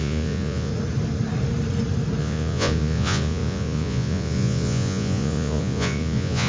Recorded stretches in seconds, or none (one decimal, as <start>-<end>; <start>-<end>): 0.7-2.2